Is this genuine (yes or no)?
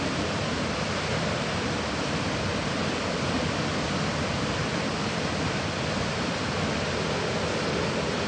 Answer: yes